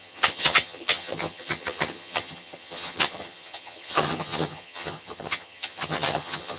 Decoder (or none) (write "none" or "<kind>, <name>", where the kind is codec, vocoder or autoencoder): vocoder, HiFi-GAN